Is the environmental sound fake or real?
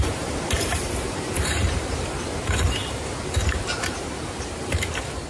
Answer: fake